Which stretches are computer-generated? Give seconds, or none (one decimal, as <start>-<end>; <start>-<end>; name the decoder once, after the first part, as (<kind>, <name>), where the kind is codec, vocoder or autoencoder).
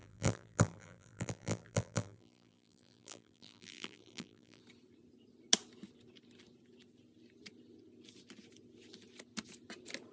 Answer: 0.0-4.6 (vocoder, BigVGAN v2)